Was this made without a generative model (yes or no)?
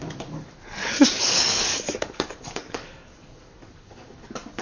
no